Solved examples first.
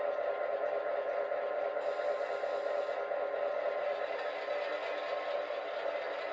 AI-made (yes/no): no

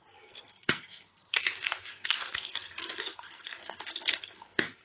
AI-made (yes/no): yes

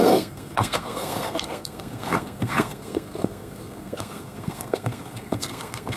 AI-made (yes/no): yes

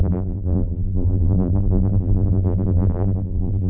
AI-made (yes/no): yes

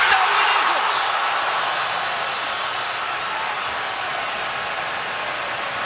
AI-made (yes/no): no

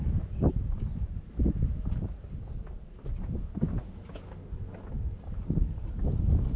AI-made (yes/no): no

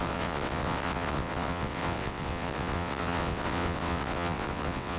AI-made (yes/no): yes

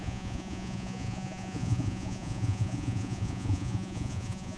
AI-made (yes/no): yes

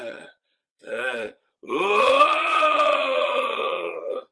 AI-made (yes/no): yes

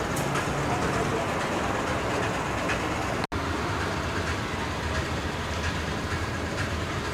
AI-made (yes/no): no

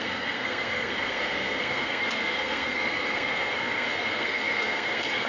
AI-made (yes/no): yes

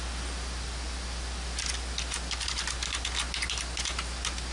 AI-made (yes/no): no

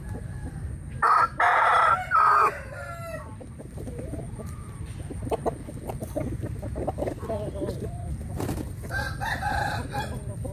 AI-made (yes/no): no